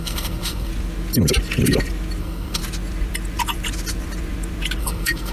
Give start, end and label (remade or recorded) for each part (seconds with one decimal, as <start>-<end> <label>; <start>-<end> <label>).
0.0-0.7 remade; 0.7-2.2 recorded; 2.2-2.6 remade; 2.6-4.8 recorded; 4.8-5.3 remade

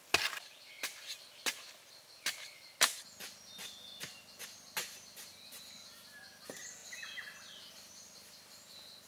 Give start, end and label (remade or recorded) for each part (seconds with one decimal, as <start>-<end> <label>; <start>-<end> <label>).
0.0-9.1 recorded